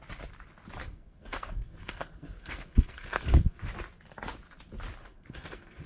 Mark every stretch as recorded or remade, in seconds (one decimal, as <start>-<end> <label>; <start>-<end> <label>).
0.0-0.8 recorded; 0.8-3.7 remade; 3.7-5.0 recorded; 5.0-5.9 remade